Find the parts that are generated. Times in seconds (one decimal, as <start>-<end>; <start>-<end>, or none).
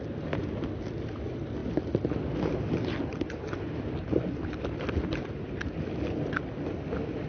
none